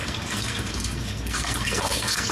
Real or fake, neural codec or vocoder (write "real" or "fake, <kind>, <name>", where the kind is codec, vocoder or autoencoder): fake, codec, SNAC